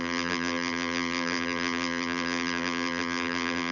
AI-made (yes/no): yes